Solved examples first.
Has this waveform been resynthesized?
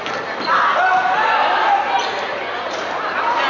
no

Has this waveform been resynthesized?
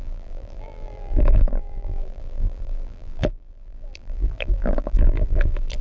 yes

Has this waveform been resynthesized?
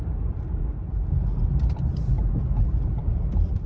yes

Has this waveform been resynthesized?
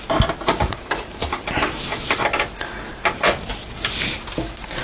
no